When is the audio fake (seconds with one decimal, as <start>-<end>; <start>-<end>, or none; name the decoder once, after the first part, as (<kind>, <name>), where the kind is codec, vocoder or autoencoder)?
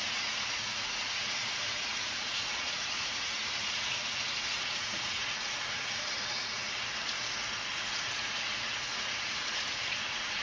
0.0-6.6 (vocoder, Vocos); 7.7-10.4